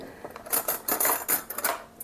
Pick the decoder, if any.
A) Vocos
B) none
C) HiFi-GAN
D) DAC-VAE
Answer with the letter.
B